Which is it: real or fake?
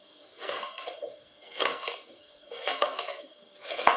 fake